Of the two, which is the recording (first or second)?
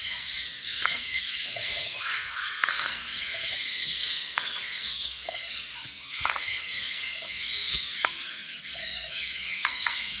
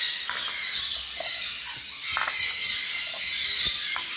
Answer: second